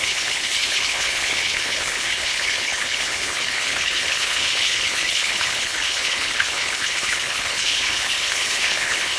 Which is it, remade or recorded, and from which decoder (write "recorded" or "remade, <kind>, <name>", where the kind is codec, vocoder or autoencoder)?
remade, codec, HILCodec